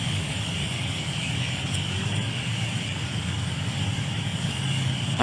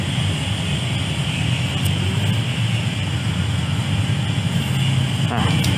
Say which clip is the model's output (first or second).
first